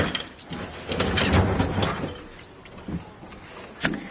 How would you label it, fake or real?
real